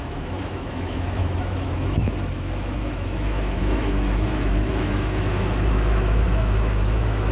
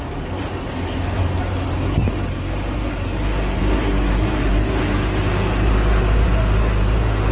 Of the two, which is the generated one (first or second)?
first